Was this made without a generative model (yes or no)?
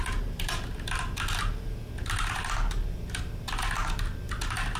yes